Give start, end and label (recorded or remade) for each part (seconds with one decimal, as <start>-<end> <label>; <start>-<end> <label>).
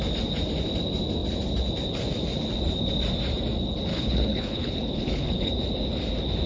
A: 0.0-3.9 recorded; 3.9-5.5 remade; 5.5-6.5 recorded